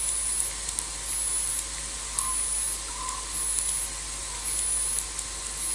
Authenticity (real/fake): real